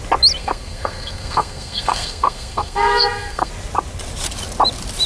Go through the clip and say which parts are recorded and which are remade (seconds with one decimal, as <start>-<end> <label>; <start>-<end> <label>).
0.0-0.4 recorded; 0.4-3.5 remade; 3.5-5.1 recorded